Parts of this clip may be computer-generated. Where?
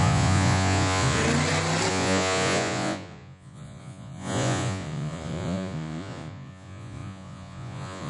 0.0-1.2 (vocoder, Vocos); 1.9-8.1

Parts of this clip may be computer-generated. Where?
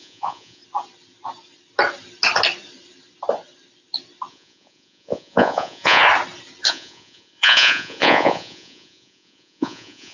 0.0-0.6 (vocoder, Vocos); 4.3-6.0; 6.7-10.1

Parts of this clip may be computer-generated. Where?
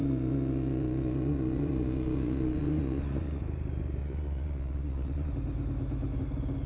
0.0-3.4 (vocoder, Vocos); 4.0-5.3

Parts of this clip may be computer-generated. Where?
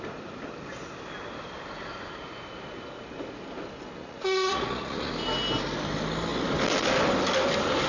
4.0-5.1 (vocoder, Vocos)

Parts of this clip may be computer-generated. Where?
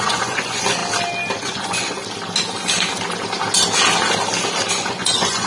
0.0-0.8 (vocoder, Vocos); 1.4-2.0; 4.7-5.5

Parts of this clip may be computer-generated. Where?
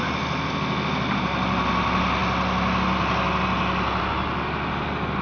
none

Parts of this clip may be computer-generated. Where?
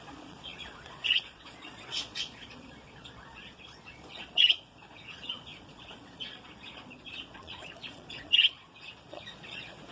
0.0-9.9 (vocoder, Vocos)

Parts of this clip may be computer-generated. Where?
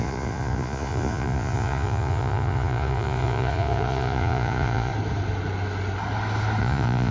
0.0-4.9 (vocoder, Vocos); 6.6-7.1